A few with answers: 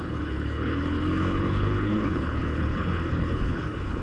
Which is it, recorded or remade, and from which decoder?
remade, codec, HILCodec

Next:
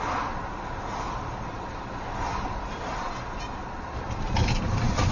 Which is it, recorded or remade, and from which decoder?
remade, vocoder, BigVGAN v2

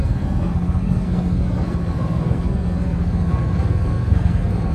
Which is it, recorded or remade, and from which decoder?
remade, codec, SNAC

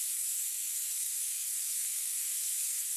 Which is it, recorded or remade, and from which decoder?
remade, codec, SNAC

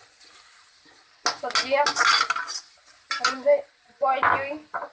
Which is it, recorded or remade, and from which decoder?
recorded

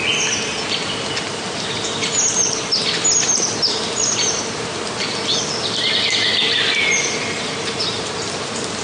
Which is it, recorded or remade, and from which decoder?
recorded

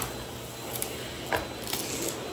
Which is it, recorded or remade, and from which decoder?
recorded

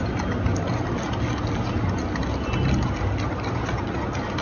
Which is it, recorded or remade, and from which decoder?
recorded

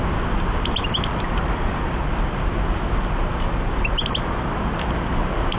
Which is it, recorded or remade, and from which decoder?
recorded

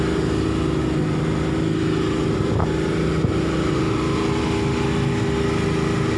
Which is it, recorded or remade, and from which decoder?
recorded